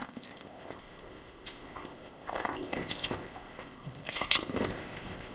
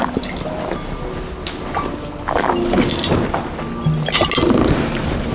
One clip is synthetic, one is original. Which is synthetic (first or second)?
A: first